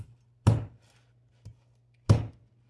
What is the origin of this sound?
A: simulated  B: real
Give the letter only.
B